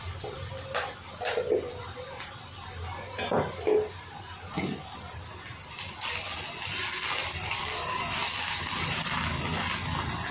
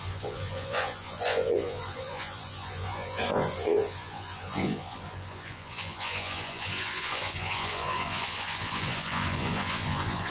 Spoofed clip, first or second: second